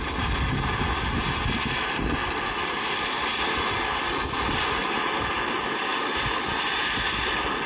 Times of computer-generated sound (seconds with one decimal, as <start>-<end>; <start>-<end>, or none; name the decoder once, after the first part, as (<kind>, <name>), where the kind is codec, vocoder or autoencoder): 2.2-3.6 (vocoder, BigVGAN v2); 5.9-7.3